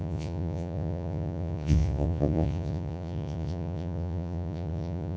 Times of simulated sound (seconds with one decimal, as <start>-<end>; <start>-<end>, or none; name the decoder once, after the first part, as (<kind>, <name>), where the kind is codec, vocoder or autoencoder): 0.0-5.2 (vocoder, Vocos)